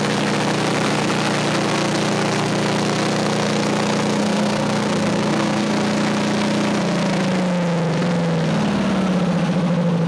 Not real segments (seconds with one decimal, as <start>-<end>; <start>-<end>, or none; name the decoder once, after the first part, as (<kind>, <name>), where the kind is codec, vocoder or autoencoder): 4.2-5.7 (codec, SNAC)